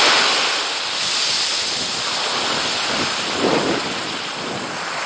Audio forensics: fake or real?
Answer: real